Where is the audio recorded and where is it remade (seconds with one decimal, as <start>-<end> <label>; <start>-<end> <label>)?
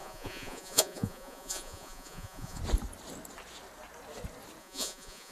0.0-2.6 remade; 2.6-4.6 recorded; 4.6-5.3 remade